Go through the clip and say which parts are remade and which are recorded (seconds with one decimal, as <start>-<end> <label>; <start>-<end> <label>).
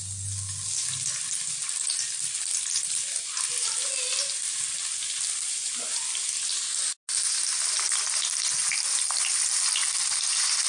0.0-10.7 recorded